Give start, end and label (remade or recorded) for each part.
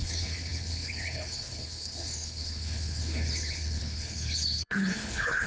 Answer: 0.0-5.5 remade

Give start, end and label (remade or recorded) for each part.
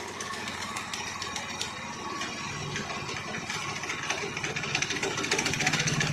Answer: 0.0-0.9 remade; 0.9-4.6 recorded; 4.6-6.1 remade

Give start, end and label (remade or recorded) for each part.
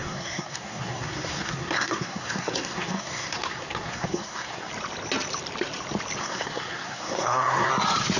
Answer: 0.0-4.7 remade; 4.7-6.2 recorded; 6.2-7.7 remade; 7.7-8.2 recorded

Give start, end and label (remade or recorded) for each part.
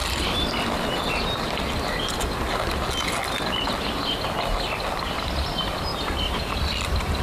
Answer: 0.0-0.5 remade; 0.5-5.9 recorded; 5.9-7.2 remade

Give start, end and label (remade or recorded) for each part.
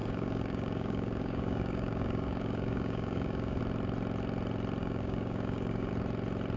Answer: 0.0-3.6 remade; 3.6-4.8 recorded; 4.8-5.9 remade; 5.9-6.6 recorded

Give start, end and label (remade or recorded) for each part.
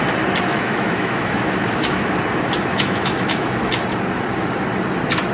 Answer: 0.0-0.5 recorded; 0.5-2.1 remade; 2.1-2.7 recorded; 2.7-3.7 remade; 3.7-5.3 recorded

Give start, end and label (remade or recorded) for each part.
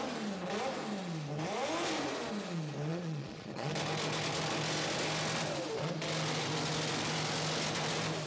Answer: 0.0-2.9 recorded; 2.9-3.7 remade; 3.7-8.3 recorded